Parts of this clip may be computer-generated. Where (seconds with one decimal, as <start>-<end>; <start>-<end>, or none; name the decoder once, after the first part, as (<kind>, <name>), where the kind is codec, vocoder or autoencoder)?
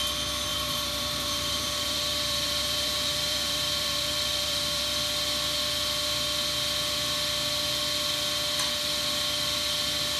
0.5-4.8 (vocoder, BigVGAN v2)